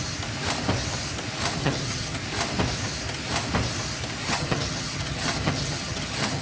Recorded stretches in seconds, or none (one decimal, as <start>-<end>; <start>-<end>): 0.0-1.6; 2.2-4.2

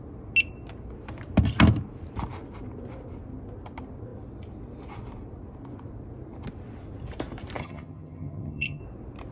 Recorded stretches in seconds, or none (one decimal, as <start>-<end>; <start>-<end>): 0.0-7.6; 8.8-9.3

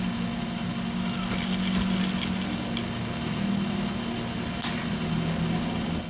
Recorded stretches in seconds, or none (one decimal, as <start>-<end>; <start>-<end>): 0.0-6.1

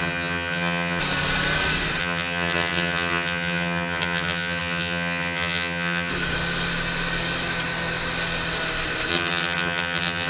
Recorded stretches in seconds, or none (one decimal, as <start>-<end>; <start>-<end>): 1.0-2.0; 6.1-9.1

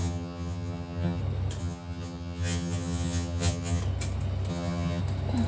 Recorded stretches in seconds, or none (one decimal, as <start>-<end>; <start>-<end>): 1.2-1.6; 3.8-4.5; 5.0-5.5

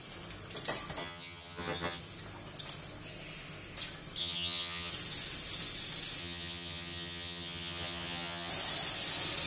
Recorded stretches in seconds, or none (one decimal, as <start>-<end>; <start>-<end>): 0.0-1.0; 2.0-4.2; 4.9-6.2; 8.5-9.5